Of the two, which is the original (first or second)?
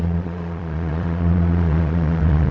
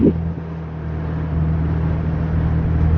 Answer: second